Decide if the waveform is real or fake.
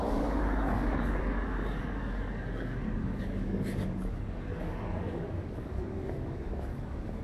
fake